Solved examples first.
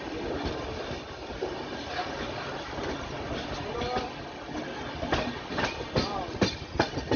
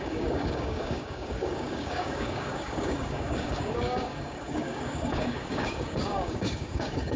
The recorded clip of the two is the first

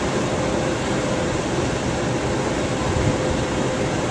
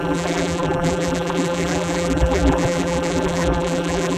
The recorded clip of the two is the first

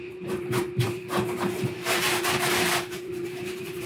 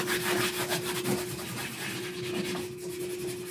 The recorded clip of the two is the second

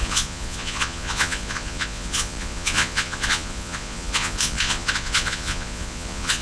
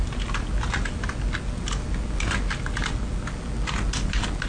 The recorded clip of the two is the second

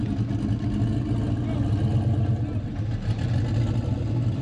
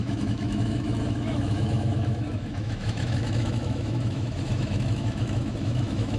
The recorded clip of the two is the first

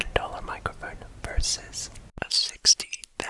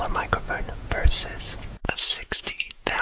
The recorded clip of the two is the first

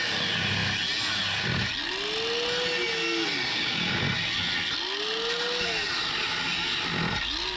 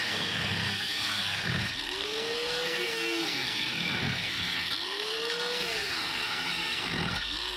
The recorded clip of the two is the first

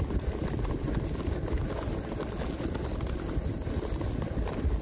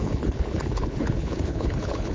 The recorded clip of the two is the first